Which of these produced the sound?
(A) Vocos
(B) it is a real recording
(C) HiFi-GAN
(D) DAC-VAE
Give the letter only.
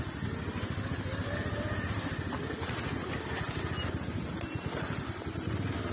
B